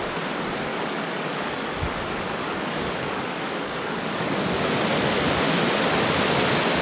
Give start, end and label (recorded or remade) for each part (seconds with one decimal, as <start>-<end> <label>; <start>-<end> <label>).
0.0-0.7 recorded; 0.7-4.8 remade; 4.8-6.8 recorded